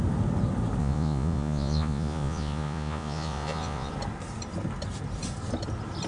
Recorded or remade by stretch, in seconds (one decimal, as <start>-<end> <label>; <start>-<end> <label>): 0.0-0.8 recorded; 0.8-3.9 remade; 3.9-6.1 recorded